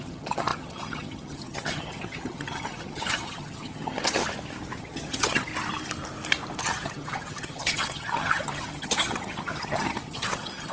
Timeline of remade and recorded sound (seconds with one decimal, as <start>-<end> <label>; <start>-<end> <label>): 0.0-4.2 remade; 4.2-4.8 recorded; 4.8-5.5 remade; 5.5-6.6 recorded; 6.6-10.7 remade